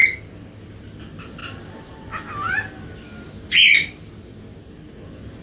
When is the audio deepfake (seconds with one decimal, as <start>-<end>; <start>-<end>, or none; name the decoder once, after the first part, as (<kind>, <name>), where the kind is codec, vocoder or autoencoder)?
0.0-5.4 (vocoder, BigVGAN v2)